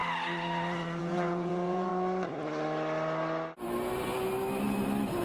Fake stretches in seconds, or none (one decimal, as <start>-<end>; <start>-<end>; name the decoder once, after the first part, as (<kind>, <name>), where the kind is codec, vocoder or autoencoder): 1.0-1.9 (vocoder, Vocos)